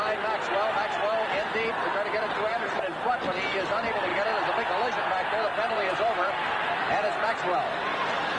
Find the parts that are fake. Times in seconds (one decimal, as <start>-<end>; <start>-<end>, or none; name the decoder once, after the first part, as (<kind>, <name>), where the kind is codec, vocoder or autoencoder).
2.5-3.1 (vocoder, BigVGAN v2); 5.5-7.3